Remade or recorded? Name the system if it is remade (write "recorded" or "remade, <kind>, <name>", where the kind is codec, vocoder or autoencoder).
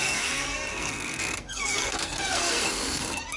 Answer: remade, codec, SNAC